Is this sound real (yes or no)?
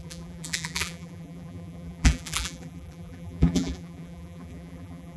no